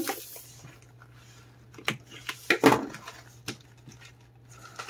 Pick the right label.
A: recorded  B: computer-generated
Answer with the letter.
A